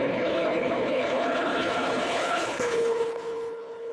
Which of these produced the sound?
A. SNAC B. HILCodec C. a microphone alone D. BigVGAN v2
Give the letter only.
B